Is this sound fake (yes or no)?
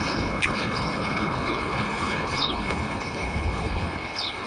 yes